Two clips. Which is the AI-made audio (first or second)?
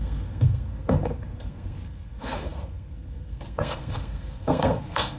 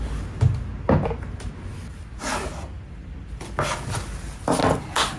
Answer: first